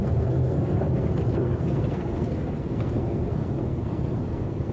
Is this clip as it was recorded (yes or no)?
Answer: no